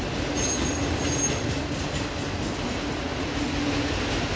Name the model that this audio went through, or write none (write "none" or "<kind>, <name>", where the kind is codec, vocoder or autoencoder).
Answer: none